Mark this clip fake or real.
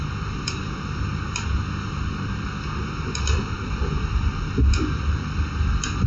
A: real